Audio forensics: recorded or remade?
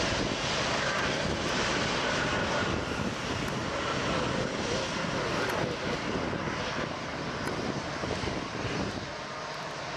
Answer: recorded